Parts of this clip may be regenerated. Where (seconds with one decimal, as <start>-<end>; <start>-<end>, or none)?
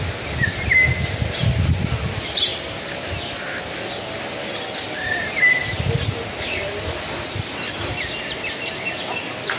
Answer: none